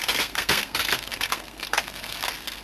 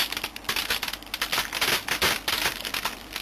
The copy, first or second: first